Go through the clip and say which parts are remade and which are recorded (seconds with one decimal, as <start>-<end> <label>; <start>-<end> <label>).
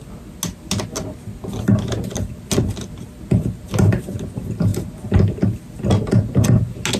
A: 0.0-7.0 recorded